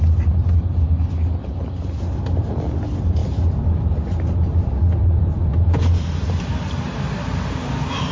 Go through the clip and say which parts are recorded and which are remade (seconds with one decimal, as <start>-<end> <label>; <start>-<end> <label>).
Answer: 0.0-8.1 recorded